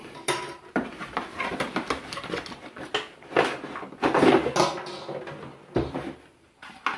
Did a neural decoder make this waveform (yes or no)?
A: no